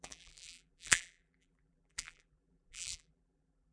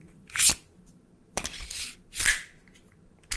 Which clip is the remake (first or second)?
first